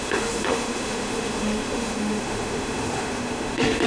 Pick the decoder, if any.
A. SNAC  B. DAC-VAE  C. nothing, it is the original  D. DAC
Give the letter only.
B